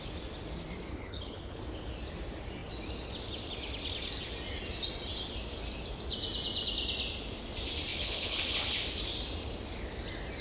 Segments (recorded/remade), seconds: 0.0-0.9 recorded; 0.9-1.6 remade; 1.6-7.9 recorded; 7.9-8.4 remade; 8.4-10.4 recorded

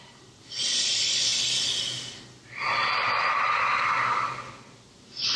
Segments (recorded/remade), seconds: 0.0-5.4 recorded

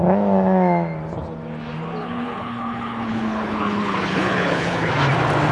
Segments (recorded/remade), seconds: 0.0-2.0 recorded; 2.0-4.9 remade; 4.9-5.5 recorded

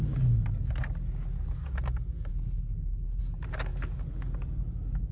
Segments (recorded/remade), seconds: 0.0-2.3 recorded; 2.3-3.2 remade; 3.2-5.1 recorded

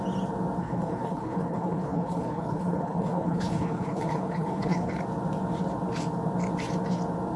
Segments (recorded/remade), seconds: 0.0-0.6 recorded; 0.6-5.0 remade; 5.0-7.4 recorded